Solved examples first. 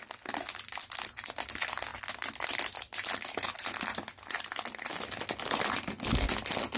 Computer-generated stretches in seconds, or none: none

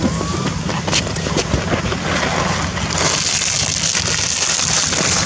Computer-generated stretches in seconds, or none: none

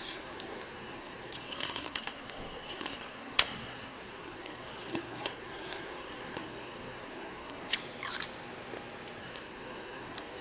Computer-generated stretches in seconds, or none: 0.0-7.8 (codec, SNAC); 9.2-10.4

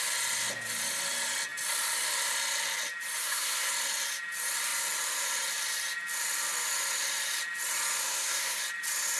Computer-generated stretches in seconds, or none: 3.2-3.7 (codec, SNAC); 8.0-8.6

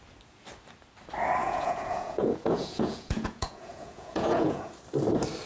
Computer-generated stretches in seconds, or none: 1.4-4.7 (vocoder, Vocos)

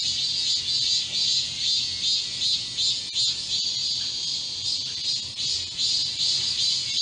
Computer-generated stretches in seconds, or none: 3.8-4.4 (vocoder, BigVGAN v2); 6.0-7.0